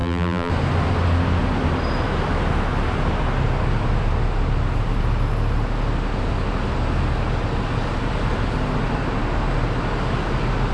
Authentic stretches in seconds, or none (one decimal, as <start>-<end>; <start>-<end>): 0.5-10.7